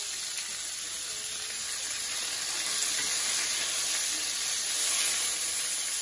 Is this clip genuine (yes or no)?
yes